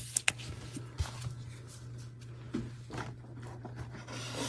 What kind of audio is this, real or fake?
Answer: real